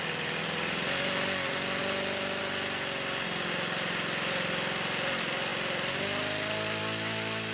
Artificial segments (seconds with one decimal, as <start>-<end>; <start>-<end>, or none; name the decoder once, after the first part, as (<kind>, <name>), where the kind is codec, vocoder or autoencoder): none